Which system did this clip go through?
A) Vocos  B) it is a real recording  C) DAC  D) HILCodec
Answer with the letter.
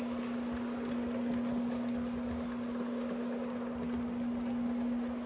B